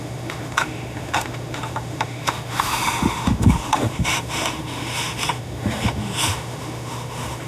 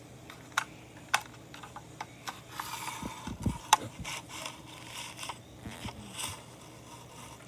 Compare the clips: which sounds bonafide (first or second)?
second